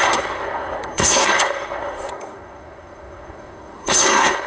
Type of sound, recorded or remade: remade